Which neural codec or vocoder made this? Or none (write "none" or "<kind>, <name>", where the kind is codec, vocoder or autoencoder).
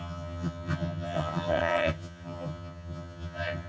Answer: vocoder, HiFi-GAN